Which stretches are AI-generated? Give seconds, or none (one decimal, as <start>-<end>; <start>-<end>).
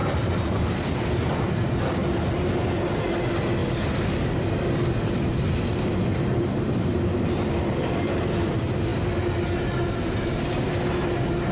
none